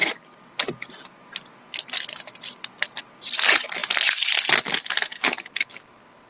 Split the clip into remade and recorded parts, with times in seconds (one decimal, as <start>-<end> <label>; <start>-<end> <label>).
0.0-6.3 recorded